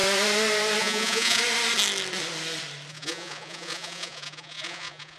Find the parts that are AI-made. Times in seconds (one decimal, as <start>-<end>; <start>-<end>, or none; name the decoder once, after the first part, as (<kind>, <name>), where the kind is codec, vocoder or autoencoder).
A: 0.8-1.4 (vocoder, Vocos); 2.9-5.2